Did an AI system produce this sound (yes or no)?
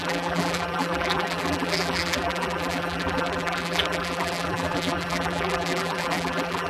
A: yes